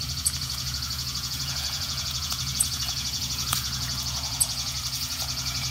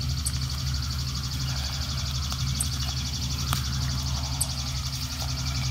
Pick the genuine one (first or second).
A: second